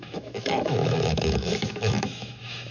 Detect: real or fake fake